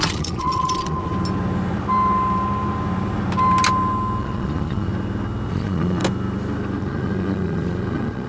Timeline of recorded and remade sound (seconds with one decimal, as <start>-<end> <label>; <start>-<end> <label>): 0.0-1.1 remade; 1.1-4.2 recorded; 4.2-4.9 remade; 4.9-5.5 recorded; 5.5-6.0 remade; 6.0-6.8 recorded; 6.8-8.3 remade